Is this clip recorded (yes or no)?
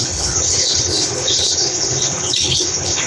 no